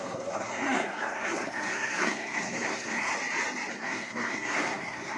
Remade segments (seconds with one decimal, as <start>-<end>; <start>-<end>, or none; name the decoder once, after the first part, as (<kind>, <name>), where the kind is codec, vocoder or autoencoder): 0.0-3.1 (codec, SNAC); 3.7-5.2